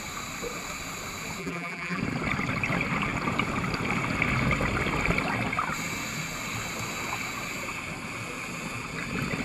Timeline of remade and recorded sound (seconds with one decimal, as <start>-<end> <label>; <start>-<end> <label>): 0.0-1.4 recorded; 1.4-2.0 remade; 2.0-9.4 recorded